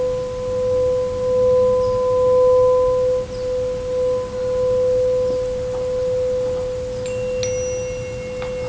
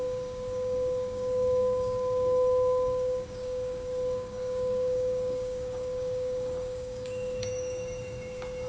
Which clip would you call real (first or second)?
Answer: first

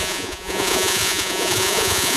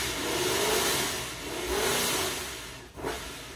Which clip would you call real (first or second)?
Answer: second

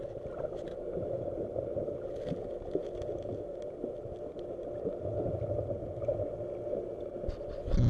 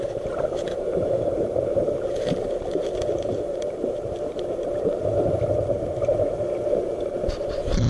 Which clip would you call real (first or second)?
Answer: first